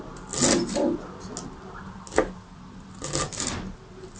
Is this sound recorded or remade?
recorded